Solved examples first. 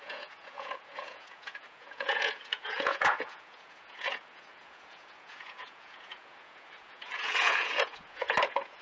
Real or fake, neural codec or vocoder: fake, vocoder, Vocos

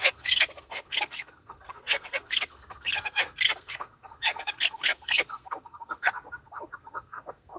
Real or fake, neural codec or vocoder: fake, codec, SNAC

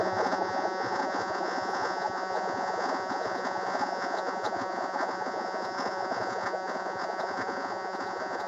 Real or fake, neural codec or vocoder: fake, vocoder, Vocos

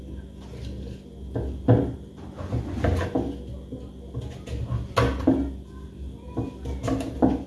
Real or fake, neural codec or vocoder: real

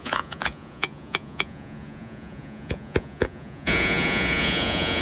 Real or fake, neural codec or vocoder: fake, vocoder, Vocos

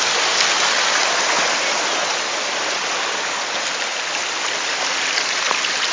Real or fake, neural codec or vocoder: real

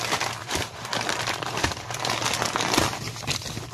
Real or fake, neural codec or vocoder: real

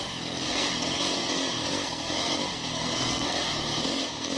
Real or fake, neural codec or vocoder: fake, codec, SNAC